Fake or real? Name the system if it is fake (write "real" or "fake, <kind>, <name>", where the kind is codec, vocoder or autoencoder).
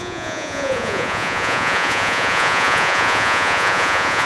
fake, vocoder, Vocos